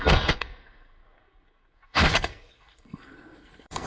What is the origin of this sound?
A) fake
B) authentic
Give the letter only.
A